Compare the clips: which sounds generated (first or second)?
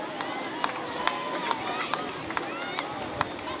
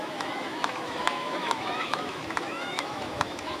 second